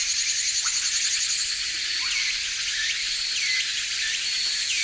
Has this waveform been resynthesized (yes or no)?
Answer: no